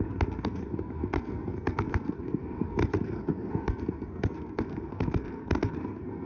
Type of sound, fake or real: fake